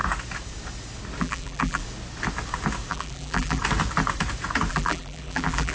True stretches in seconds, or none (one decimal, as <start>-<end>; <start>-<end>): 0.0-1.2; 1.8-2.9; 3.6-4.7